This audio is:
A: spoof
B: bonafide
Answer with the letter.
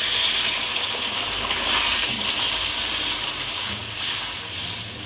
B